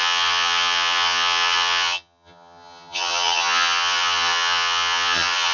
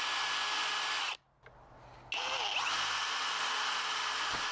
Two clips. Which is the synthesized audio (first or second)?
first